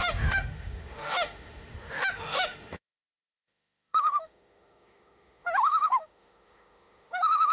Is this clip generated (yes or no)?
yes